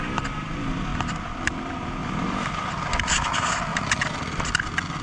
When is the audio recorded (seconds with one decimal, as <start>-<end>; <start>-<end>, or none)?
0.0-0.9; 1.5-2.0; 2.7-3.7; 4.4-5.0